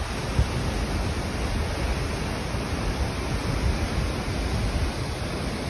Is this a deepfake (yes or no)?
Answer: no